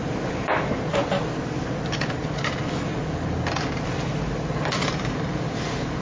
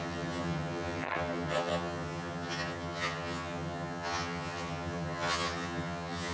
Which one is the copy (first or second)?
second